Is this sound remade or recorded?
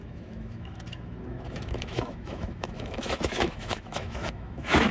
remade